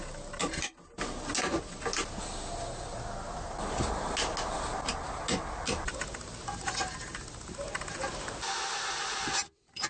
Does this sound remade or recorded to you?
recorded